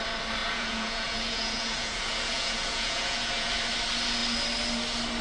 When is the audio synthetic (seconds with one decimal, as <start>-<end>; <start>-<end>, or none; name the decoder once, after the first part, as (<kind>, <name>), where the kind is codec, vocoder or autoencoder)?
0.4-3.5 (vocoder, Vocos)